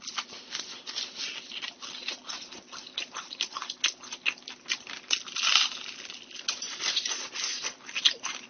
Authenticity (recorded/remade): recorded